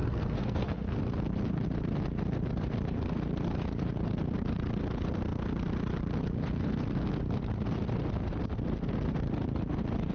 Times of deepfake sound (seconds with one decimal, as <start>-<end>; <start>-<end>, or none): 0.0-1.0